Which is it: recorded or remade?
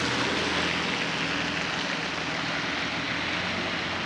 recorded